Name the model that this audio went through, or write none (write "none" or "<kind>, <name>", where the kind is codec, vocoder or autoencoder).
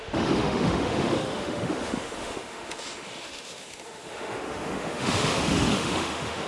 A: autoencoder, DAC-VAE